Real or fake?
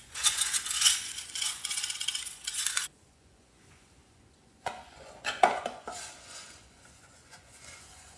fake